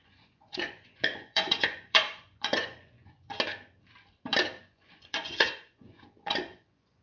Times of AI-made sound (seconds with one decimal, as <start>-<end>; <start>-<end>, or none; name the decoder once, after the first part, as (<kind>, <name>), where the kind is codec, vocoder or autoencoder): 0.0-3.3 (vocoder, Vocos); 4.6-7.0